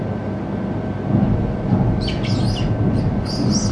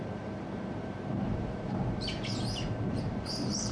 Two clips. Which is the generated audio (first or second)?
second